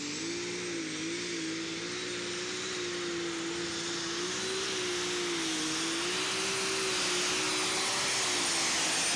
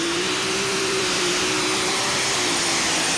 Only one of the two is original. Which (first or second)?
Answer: first